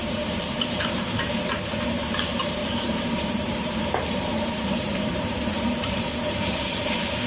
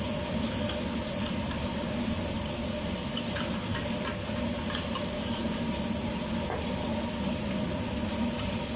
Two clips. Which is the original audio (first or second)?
second